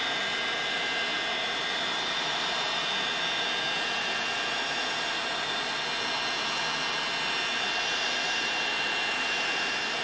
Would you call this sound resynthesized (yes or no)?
yes